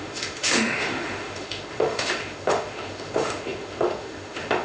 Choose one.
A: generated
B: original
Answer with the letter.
A